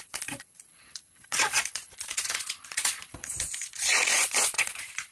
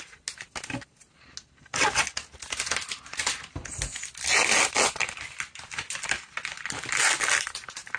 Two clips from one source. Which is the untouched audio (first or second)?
second